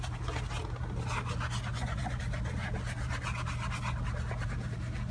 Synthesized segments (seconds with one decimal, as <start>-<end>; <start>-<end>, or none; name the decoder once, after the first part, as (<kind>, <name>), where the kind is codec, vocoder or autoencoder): 1.7-2.2 (vocoder, Vocos)